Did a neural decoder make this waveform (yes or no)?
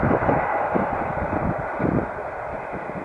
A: yes